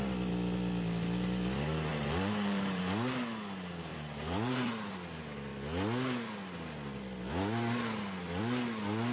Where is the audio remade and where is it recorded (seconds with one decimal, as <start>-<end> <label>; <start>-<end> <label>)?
0.0-1.9 recorded; 1.9-2.8 remade; 2.8-3.9 recorded; 3.9-4.7 remade; 4.7-9.1 recorded